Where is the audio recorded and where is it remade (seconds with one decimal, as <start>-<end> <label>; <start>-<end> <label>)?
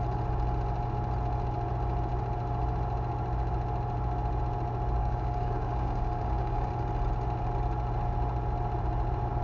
0.0-5.0 recorded; 5.0-6.7 remade; 6.7-9.4 recorded